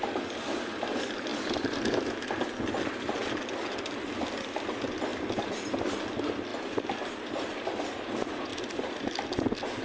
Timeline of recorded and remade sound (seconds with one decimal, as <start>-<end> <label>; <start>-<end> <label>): 0.0-1.3 recorded; 1.3-2.4 remade; 2.4-5.1 recorded; 5.1-5.7 remade; 5.7-6.5 recorded; 6.5-7.6 remade; 7.6-8.5 recorded; 8.5-9.4 remade; 9.4-9.8 recorded

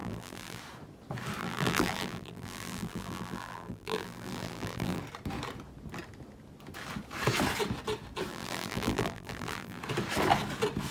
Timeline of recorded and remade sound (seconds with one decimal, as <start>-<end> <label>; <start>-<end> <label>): 0.0-0.6 remade; 0.6-1.4 recorded; 1.4-5.0 remade; 5.0-8.3 recorded; 8.3-9.8 remade; 9.8-10.9 recorded

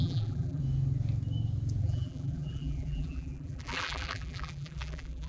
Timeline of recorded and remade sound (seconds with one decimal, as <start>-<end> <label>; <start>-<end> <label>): 0.0-0.6 remade; 0.6-1.8 recorded; 1.8-5.3 remade

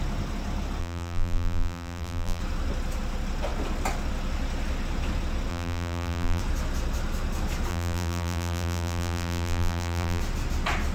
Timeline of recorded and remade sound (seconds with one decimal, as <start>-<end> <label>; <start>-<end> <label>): 0.0-0.8 recorded; 0.8-2.4 remade; 2.4-5.5 recorded; 5.5-6.4 remade; 6.4-7.7 recorded; 7.7-10.2 remade; 10.2-10.9 recorded

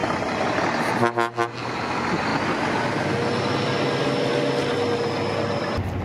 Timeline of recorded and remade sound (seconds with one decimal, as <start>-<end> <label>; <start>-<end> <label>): 0.0-6.0 recorded

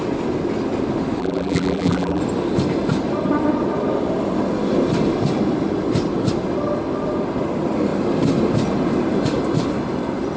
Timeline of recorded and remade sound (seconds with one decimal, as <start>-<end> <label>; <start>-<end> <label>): 0.0-1.2 recorded; 1.2-2.2 remade; 2.2-10.4 recorded

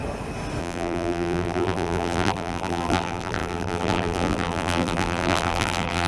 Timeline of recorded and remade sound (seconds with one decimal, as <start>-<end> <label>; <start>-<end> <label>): 0.0-0.6 recorded; 0.6-6.1 remade

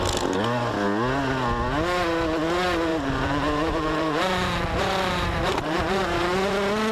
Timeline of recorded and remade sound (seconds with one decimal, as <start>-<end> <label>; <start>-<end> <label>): 0.0-2.9 recorded; 2.9-6.5 remade; 6.5-6.9 recorded